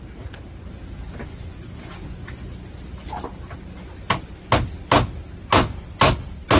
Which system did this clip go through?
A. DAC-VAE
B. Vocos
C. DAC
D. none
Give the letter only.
D